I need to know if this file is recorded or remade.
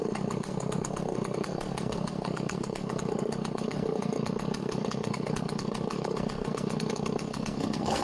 remade